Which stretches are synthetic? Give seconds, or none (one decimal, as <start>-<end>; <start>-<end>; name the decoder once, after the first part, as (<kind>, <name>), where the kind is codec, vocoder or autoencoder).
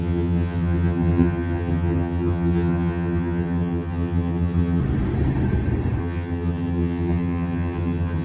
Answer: 0.0-4.8 (vocoder, HiFi-GAN); 6.0-8.2